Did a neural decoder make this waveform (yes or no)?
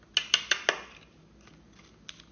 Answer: no